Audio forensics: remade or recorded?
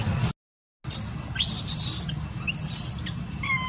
recorded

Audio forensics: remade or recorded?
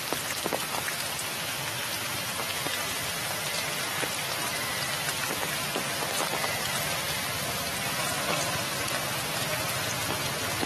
recorded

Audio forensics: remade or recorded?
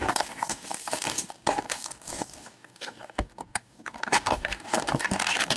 remade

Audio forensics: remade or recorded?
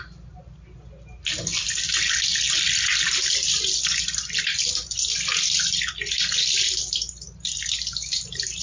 recorded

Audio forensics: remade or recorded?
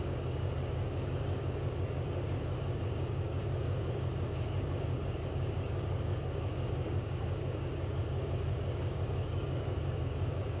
remade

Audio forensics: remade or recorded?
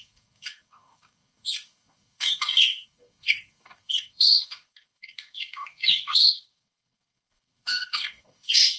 remade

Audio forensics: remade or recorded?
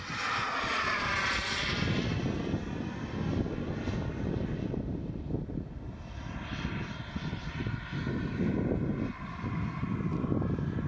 recorded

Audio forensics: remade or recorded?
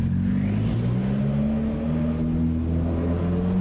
recorded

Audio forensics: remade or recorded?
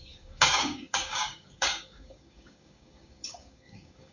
remade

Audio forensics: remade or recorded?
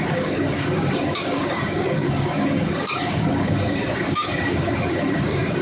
remade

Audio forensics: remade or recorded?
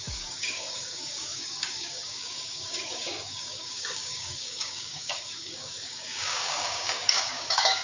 remade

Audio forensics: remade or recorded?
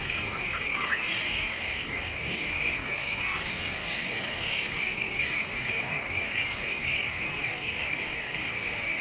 remade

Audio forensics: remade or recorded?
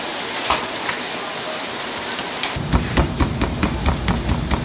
recorded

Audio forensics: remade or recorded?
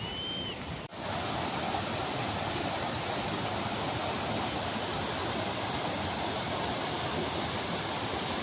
recorded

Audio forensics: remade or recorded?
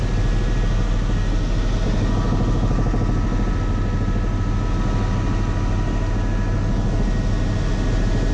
recorded